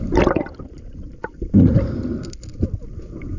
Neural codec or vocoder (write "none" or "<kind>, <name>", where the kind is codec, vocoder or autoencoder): vocoder, BigVGAN v2